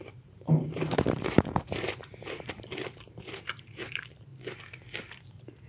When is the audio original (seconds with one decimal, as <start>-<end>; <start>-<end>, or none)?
4.3-5.3